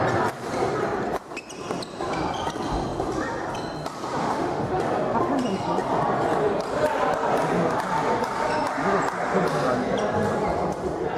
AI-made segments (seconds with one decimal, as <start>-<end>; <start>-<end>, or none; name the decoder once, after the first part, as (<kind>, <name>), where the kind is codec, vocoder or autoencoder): 4.2-4.8 (autoencoder, DAC-VAE)